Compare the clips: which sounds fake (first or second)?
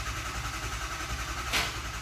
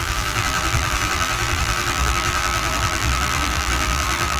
second